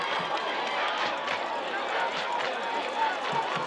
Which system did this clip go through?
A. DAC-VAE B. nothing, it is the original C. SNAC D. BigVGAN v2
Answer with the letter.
B